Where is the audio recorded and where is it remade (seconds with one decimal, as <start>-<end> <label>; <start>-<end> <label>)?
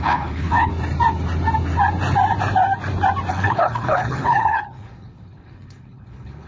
0.0-0.7 remade; 0.7-3.3 recorded; 3.3-6.5 remade